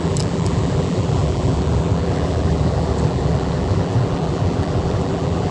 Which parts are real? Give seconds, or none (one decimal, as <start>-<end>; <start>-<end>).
none